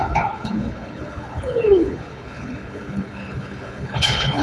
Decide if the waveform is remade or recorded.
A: remade